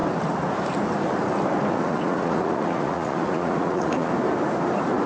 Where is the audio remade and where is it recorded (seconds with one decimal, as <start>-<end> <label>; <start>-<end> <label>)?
0.0-1.7 recorded; 1.7-4.1 remade; 4.1-5.1 recorded